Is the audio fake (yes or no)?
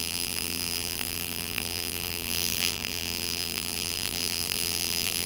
yes